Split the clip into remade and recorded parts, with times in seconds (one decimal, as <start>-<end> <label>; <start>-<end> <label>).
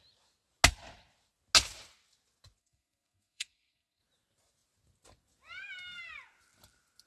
0.0-2.6 recorded; 2.6-4.0 remade; 4.0-7.1 recorded